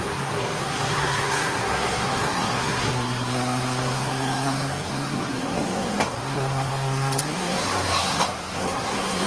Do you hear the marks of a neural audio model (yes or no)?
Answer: yes